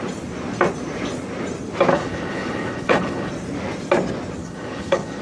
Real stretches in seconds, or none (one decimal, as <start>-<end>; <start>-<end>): 0.0-1.9; 3.3-4.4